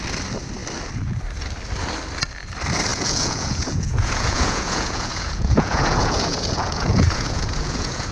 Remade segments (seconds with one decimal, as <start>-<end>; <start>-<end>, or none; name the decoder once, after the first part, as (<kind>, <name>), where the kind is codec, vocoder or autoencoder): 2.9-8.1 (vocoder, Vocos)